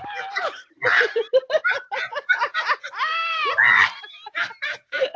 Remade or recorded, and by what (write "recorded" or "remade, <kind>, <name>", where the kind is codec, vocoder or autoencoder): remade, vocoder, BigVGAN v2